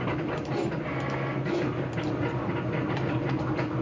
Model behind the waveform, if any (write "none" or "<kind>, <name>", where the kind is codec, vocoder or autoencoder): none